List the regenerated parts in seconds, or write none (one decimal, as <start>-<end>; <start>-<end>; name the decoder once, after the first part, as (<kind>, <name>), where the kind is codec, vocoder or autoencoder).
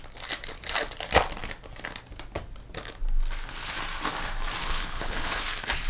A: 4.6-5.4 (codec, HILCodec)